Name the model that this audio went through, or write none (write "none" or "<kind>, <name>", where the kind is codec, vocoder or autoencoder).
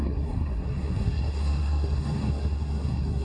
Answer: codec, SNAC